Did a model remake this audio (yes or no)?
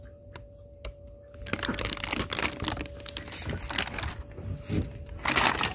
no